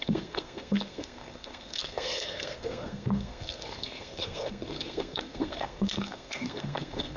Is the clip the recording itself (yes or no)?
no